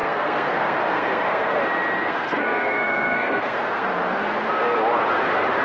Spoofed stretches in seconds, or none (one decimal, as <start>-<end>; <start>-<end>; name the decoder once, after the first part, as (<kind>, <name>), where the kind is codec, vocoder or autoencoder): 0.0-1.6 (codec, SNAC); 2.0-4.2